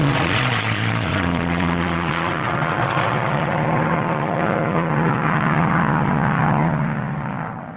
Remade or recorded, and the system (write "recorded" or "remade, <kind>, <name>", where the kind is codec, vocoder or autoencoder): remade, vocoder, Vocos